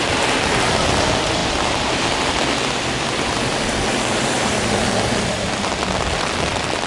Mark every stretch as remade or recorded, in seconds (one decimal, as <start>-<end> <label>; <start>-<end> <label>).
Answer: 0.0-6.9 recorded